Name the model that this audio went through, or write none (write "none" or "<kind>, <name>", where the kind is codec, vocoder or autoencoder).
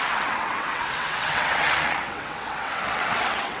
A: vocoder, WaveNeXt